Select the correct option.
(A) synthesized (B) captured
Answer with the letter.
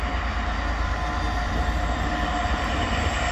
B